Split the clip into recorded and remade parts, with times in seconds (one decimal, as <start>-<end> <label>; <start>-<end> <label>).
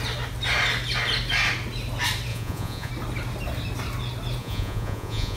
0.0-2.3 recorded; 2.3-2.9 remade; 2.9-4.4 recorded; 4.4-5.4 remade